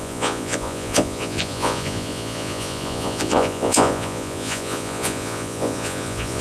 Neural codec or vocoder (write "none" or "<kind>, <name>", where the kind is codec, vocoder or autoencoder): vocoder, Vocos